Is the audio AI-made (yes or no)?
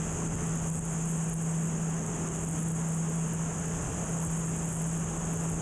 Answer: no